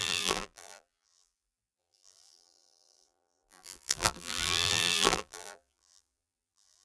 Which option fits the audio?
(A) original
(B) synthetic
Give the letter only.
B